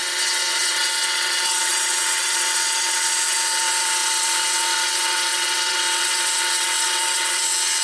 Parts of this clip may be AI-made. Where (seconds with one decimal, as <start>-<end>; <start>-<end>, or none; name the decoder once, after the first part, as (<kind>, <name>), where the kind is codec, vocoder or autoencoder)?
0.0-7.8 (vocoder, WaveNeXt)